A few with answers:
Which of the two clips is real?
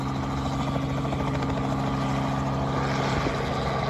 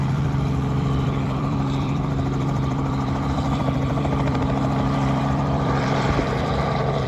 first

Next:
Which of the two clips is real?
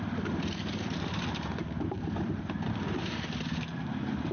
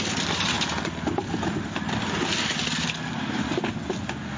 second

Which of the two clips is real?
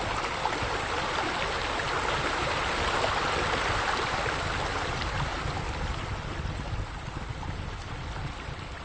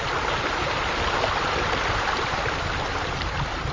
first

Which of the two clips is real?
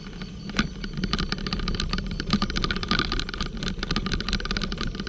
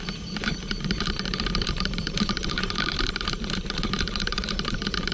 first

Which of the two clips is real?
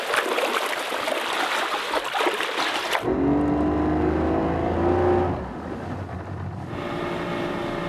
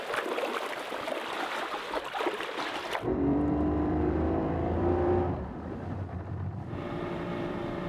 first